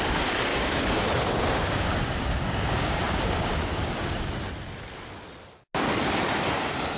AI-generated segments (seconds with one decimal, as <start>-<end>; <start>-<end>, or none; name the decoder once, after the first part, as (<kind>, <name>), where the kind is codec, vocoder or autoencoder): 0.5-4.3 (codec, DAC)